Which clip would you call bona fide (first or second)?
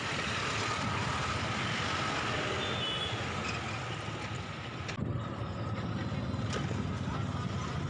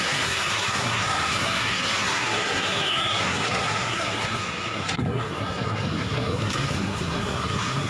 first